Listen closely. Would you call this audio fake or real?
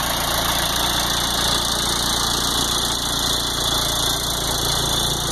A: real